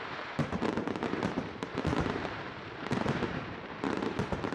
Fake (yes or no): yes